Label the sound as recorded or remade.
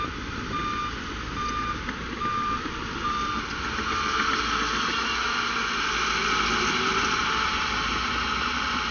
recorded